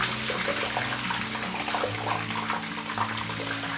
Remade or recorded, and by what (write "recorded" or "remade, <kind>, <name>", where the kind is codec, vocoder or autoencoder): recorded